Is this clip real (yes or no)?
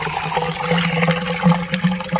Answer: yes